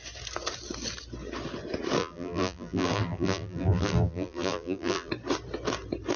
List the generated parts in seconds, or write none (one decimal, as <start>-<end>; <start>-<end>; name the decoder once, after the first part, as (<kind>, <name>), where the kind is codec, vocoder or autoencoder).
2.0-5.1 (vocoder, BigVGAN v2)